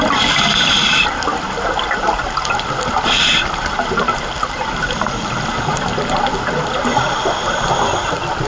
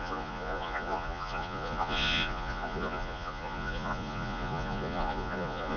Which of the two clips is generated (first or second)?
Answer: second